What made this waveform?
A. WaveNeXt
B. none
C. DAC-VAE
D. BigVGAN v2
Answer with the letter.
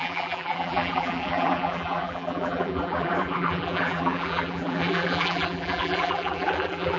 D